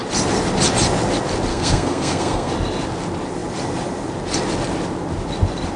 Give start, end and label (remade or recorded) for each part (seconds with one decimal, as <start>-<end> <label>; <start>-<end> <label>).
0.0-1.5 recorded; 1.5-2.5 remade; 2.5-5.8 recorded